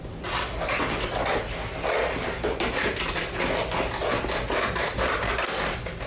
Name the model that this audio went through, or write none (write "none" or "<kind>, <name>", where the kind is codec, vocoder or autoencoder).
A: none